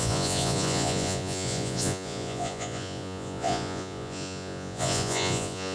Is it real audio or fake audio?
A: fake